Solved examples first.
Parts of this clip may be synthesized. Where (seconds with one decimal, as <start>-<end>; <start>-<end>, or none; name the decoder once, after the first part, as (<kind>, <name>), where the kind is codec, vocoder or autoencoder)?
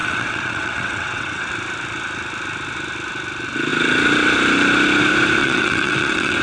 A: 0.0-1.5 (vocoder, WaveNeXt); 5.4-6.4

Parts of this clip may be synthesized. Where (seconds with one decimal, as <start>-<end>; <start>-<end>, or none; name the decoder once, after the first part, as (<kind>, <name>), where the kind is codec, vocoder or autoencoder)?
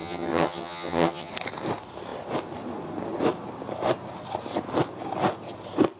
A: 0.0-1.3 (vocoder, HiFi-GAN)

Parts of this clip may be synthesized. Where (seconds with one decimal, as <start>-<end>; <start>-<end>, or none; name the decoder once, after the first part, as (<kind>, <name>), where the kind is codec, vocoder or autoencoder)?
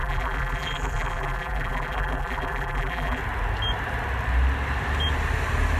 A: 0.0-3.2 (vocoder, BigVGAN v2)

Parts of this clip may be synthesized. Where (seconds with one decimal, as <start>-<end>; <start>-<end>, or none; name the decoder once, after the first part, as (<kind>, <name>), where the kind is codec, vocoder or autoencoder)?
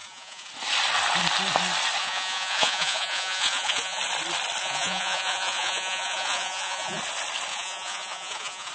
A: 0.0-0.5 (vocoder, Vocos); 2.0-4.0; 4.6-7.0; 7.5-8.7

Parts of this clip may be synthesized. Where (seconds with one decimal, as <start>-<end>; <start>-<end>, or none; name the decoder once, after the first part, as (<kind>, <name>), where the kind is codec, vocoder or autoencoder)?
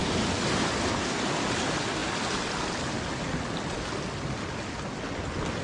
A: none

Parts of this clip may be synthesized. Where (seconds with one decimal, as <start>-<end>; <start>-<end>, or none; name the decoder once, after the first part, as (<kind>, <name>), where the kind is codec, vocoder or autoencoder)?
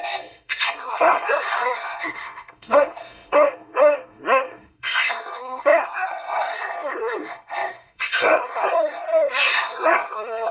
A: 0.0-10.5 (codec, SNAC)